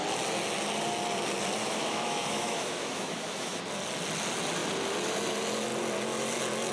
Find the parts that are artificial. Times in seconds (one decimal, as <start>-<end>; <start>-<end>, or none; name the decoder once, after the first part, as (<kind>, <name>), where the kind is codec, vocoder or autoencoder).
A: 1.6-3.6 (autoencoder, DAC-VAE)

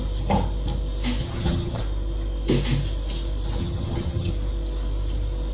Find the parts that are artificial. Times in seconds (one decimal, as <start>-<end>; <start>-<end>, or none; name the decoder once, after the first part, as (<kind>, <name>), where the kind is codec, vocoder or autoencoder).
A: 1.2-1.8 (vocoder, HiFi-GAN); 3.6-4.3

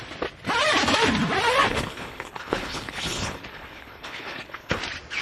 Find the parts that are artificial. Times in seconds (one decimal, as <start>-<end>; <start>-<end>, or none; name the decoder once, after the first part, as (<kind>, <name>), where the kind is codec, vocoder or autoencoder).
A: 1.7-4.8 (codec, HILCodec)

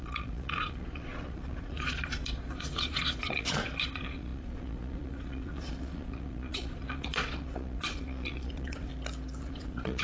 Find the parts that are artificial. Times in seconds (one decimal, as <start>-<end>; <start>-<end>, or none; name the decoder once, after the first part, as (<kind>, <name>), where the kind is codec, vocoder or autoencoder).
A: 0.0-8.9 (vocoder, Vocos); 9.4-10.0

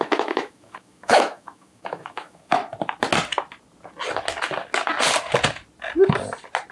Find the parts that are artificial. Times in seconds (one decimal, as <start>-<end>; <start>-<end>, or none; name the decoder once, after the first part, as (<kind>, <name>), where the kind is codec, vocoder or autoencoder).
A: 0.0-2.6 (autoencoder, DAC-VAE)